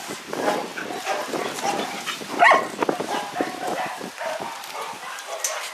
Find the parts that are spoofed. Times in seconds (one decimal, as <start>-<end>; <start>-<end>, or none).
none